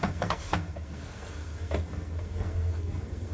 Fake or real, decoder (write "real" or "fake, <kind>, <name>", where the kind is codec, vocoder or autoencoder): fake, codec, SNAC